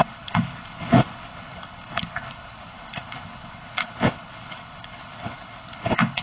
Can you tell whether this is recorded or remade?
remade